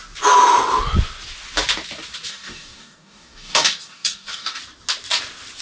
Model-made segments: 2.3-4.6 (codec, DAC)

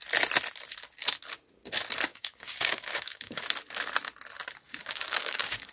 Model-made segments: 2.1-3.4 (codec, DAC); 4.8-5.7

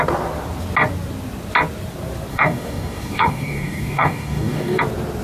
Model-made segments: 2.3-4.8 (codec, DAC)

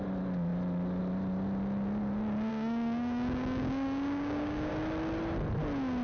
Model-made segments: 2.5-4.7 (codec, DAC)

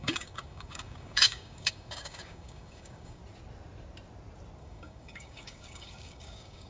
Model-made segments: 0.0-3.2 (codec, DAC); 4.6-6.7

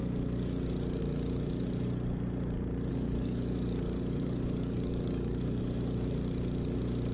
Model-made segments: 2.9-5.6 (codec, DAC)